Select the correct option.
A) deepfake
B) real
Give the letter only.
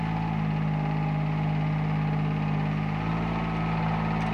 B